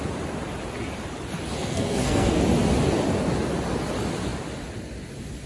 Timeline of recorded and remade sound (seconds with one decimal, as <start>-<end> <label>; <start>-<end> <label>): 0.0-1.6 recorded; 1.6-2.4 remade; 2.4-5.5 recorded